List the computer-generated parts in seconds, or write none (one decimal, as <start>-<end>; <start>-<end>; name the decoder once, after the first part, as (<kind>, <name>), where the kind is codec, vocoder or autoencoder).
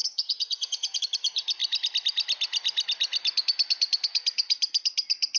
0.0-1.0 (vocoder, Vocos)